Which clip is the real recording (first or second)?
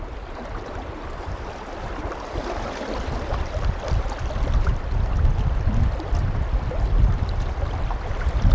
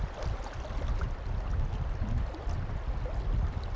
second